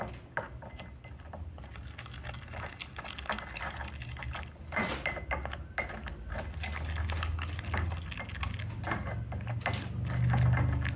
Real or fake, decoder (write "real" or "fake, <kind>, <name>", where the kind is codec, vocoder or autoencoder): real